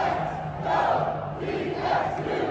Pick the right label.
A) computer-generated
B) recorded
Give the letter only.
B